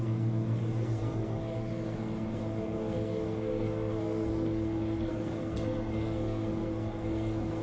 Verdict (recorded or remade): remade